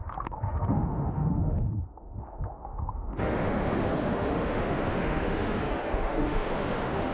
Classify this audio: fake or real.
fake